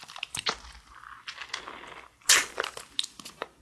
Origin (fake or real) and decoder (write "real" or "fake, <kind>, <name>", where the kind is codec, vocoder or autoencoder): real